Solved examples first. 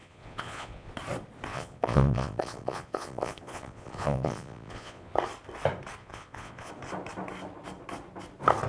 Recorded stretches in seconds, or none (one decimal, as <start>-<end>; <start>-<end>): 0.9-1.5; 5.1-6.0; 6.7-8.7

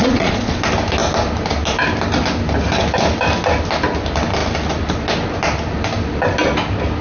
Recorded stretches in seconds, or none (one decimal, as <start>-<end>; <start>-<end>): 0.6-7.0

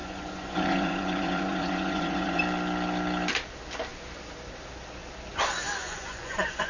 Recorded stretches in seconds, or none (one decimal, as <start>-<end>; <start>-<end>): 2.4-5.8